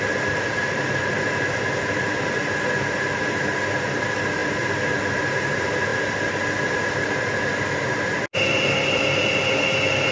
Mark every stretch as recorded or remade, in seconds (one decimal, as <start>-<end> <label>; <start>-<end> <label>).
0.0-10.1 recorded